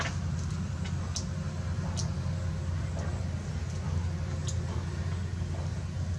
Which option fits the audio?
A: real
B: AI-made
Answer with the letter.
A